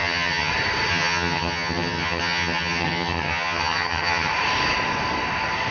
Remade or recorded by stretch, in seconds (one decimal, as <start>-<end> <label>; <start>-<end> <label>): 0.0-0.5 remade; 0.5-0.9 recorded; 0.9-4.3 remade; 4.3-5.7 recorded